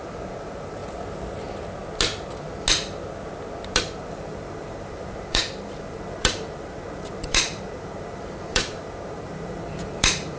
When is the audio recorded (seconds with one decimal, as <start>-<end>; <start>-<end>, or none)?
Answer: 0.8-3.8